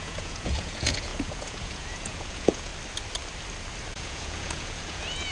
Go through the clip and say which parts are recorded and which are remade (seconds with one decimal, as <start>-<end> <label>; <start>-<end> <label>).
0.0-2.7 remade; 2.7-3.9 recorded; 3.9-5.3 remade